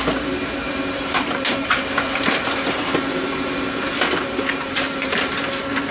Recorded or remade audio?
remade